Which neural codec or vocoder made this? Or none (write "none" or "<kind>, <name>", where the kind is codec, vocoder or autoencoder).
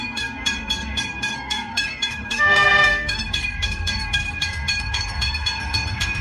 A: codec, SNAC